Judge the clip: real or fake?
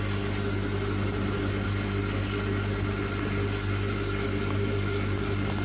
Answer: real